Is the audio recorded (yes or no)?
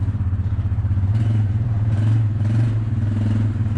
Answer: no